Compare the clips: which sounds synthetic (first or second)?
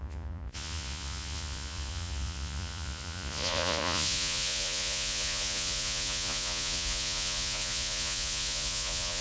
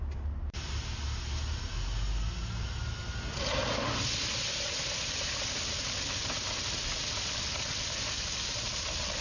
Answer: first